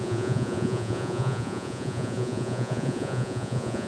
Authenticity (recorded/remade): remade